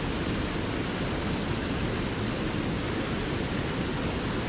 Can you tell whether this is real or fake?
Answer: real